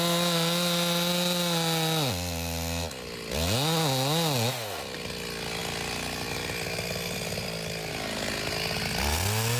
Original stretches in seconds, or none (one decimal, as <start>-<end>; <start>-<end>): 0.0-5.6; 7.9-9.6

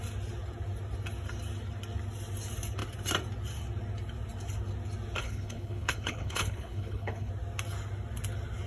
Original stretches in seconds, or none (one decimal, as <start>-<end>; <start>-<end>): 0.0-5.2; 7.3-8.7

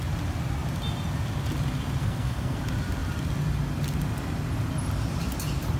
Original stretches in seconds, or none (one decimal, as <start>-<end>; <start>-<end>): 0.0-2.0; 2.6-5.8

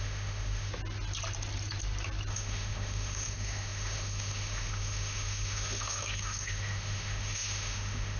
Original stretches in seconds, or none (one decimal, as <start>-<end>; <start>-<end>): 0.7-2.3

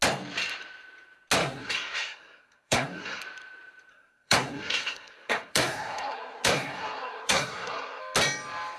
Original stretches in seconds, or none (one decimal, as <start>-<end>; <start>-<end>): 0.0-1.4; 3.2-3.9; 8.0-8.8

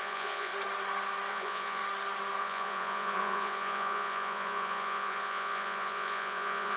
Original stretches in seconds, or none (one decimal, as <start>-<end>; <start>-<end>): 0.5-1.3; 1.8-2.4

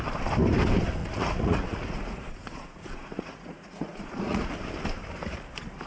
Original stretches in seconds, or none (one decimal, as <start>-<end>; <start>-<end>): 0.0-1.0; 4.5-5.9